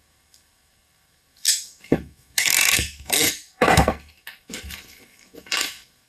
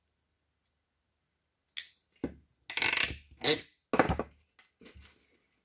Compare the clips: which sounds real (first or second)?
second